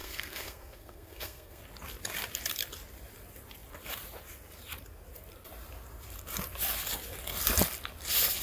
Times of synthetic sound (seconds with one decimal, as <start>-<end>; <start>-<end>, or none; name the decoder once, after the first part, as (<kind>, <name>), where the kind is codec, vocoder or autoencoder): 0.0-1.6 (codec, SNAC)